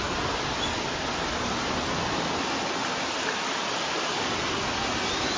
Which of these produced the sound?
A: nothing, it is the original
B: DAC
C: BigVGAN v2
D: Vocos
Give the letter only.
A